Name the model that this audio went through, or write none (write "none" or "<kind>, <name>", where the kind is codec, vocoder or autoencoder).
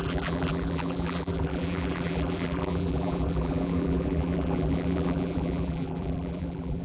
vocoder, BigVGAN v2